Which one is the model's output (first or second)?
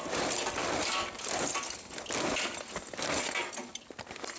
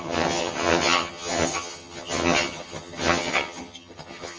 second